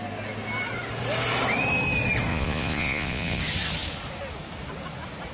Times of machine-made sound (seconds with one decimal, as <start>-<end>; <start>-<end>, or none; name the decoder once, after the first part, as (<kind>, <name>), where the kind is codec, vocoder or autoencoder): 2.3-3.4 (vocoder, Vocos)